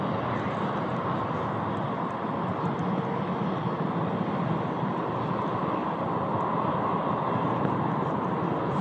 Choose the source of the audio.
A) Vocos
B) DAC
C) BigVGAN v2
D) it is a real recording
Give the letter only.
D